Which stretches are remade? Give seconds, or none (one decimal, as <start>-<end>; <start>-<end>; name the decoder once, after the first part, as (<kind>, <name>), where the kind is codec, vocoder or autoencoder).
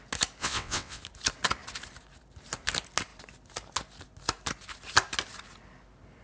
0.4-1.0 (vocoder, WaveNeXt)